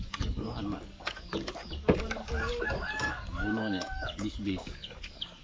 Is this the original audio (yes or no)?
no